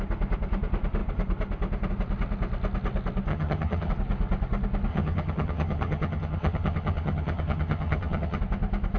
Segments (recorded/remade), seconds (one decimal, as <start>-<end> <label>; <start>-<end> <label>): 0.0-3.3 recorded; 3.3-3.9 remade; 3.9-4.9 recorded; 4.9-8.4 remade; 8.4-9.0 recorded